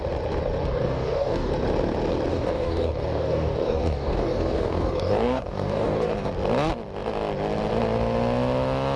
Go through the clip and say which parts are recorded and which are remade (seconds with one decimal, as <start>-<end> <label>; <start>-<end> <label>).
0.0-0.6 recorded; 0.6-1.5 remade; 1.5-2.3 recorded; 2.3-6.3 remade; 6.3-9.0 recorded